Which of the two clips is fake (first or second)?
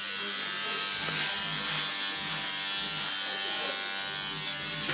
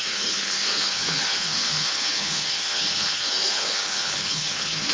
second